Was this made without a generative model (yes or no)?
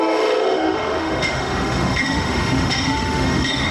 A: no